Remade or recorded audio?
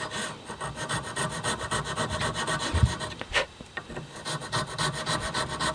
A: recorded